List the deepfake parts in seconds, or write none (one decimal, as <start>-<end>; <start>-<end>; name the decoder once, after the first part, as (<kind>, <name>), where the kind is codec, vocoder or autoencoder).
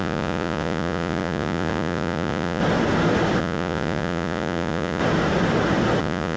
0.0-2.6 (vocoder, Vocos); 3.4-5.0; 6.0-6.4